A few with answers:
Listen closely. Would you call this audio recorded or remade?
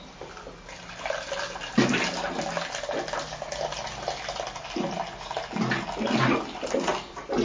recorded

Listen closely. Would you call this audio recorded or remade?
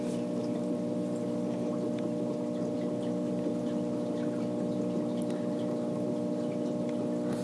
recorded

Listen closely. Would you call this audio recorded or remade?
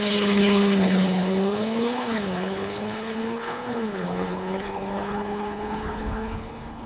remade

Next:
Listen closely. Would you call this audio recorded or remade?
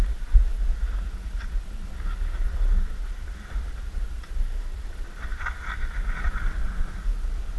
recorded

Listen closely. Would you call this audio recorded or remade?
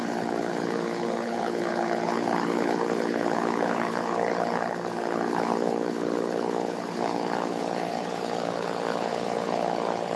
remade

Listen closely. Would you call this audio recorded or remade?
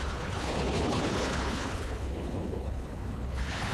remade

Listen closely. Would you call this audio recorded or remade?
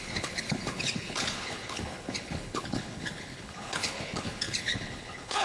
remade